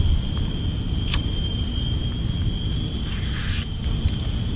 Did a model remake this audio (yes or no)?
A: no